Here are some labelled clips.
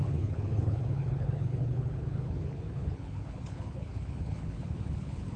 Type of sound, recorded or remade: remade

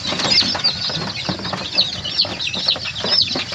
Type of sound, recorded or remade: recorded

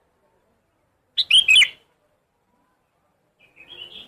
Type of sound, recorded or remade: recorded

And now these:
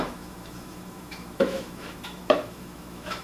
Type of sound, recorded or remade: remade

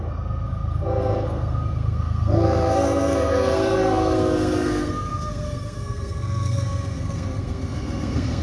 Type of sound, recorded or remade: remade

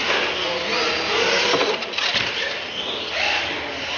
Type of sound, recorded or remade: recorded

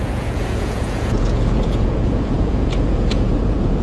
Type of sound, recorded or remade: remade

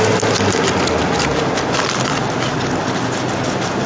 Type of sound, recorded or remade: recorded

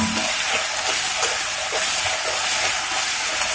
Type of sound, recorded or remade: recorded